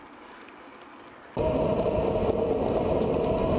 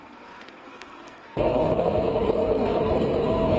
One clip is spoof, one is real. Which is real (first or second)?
first